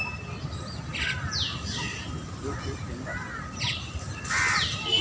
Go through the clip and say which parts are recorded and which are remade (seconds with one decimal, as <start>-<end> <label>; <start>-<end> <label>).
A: 0.0-5.0 recorded